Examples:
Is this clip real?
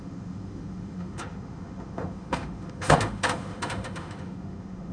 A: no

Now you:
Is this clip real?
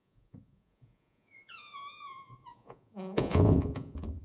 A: no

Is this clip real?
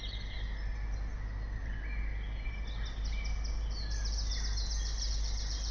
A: yes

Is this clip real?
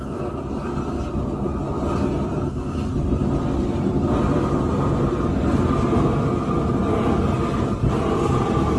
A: yes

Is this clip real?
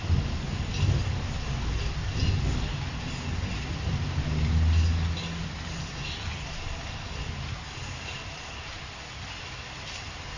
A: yes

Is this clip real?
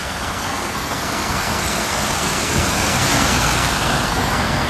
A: no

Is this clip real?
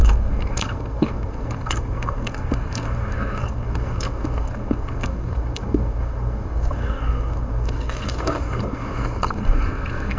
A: no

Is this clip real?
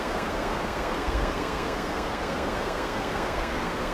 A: no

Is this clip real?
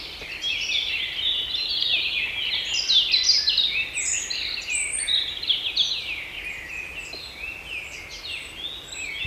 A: yes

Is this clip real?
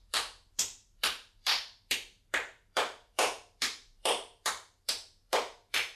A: no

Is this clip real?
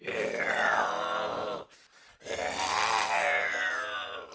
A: yes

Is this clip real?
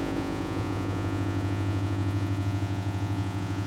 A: no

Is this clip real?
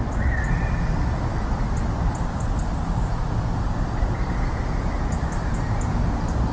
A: yes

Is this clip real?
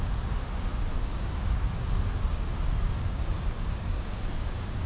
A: no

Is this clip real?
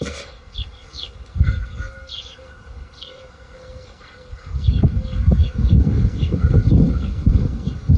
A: no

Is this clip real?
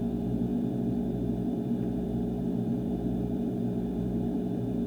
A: no